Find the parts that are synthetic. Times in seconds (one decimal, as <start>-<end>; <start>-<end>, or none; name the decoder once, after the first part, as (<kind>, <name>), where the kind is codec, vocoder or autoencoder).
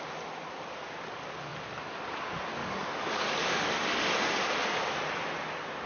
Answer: 2.6-4.1 (codec, DAC)